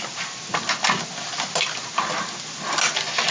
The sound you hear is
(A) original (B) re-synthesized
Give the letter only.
A